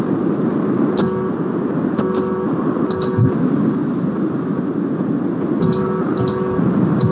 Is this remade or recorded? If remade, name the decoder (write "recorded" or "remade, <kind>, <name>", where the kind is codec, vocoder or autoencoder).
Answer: recorded